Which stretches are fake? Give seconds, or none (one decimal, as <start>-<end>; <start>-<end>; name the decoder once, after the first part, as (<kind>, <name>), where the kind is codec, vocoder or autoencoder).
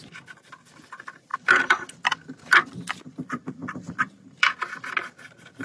1.3-4.7 (vocoder, BigVGAN v2)